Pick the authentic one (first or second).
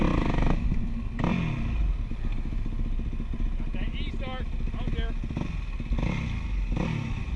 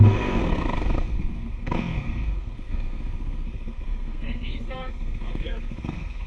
first